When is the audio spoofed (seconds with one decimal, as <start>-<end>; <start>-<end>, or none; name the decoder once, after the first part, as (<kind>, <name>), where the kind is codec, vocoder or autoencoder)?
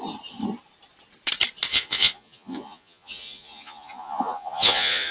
1.7-5.1 (vocoder, Vocos)